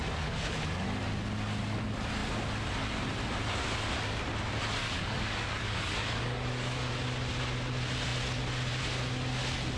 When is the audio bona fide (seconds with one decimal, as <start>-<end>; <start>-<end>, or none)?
0.0-4.8; 6.9-9.8